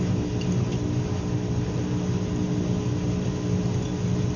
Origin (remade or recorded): remade